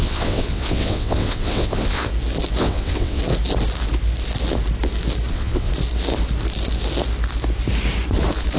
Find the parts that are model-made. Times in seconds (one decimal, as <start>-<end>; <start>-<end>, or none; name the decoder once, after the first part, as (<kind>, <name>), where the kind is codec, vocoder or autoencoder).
0.0-2.1 (vocoder, WaveNeXt); 2.6-3.2; 5.3-5.7